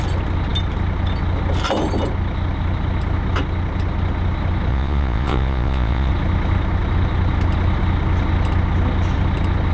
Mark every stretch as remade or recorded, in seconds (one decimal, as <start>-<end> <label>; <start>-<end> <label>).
0.0-4.7 recorded; 4.7-6.1 remade; 6.1-9.7 recorded